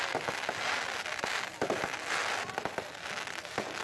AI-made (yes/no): no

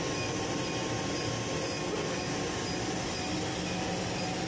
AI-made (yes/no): no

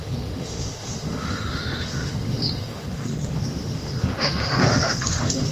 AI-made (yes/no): yes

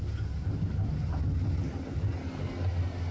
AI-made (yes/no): no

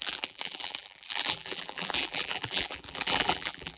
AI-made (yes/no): yes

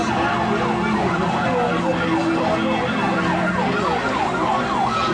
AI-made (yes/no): no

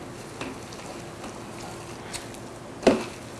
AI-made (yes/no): no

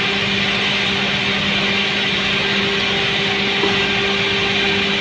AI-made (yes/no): no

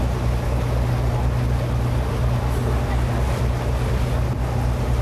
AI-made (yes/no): no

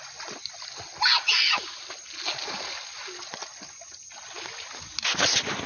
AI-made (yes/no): no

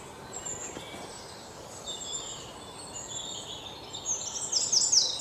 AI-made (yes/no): no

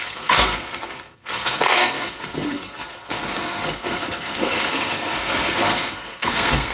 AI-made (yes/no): yes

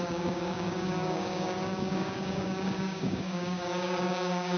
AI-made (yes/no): yes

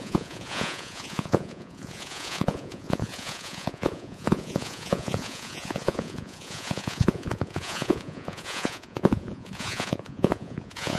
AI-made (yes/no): yes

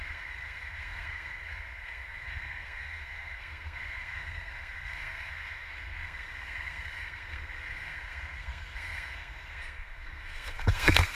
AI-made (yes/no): yes